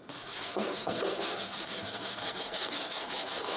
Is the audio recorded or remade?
remade